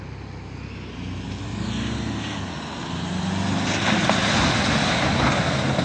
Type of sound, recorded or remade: recorded